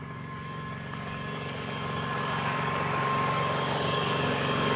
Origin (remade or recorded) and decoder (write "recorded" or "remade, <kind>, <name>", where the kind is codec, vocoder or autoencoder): remade, codec, DAC